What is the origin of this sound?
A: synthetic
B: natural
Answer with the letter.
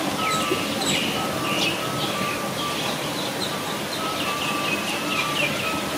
B